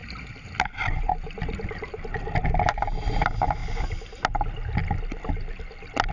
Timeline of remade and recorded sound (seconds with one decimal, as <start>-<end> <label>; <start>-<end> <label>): 0.0-6.1 recorded